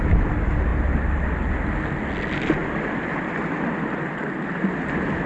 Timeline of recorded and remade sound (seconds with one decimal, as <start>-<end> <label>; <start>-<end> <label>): 0.0-2.6 recorded; 2.6-3.5 remade; 3.5-5.3 recorded